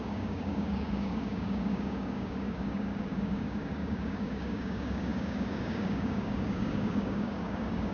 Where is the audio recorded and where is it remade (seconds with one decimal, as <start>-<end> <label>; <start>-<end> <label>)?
0.0-7.9 remade